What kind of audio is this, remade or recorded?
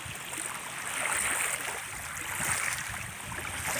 recorded